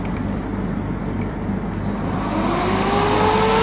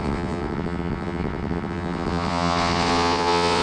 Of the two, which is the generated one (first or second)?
second